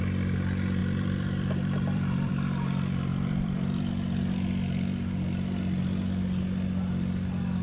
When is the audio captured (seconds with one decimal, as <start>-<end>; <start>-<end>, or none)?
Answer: 0.0-0.8; 2.3-3.1; 3.8-7.6